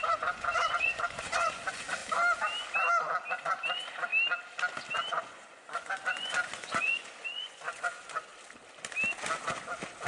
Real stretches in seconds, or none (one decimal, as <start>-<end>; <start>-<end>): 2.0-3.3; 4.1-5.0; 8.3-10.1